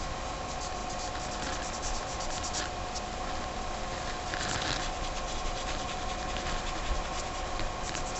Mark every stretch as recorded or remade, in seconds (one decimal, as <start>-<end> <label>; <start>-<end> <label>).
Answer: 0.0-8.2 recorded